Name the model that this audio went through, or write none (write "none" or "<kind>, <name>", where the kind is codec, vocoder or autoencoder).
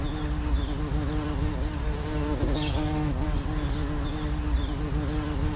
none